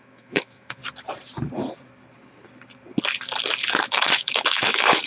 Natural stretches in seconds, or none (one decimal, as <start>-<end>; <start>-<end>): 0.8-3.9